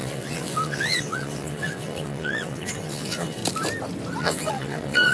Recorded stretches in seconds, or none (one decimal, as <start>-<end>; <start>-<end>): 3.4-4.2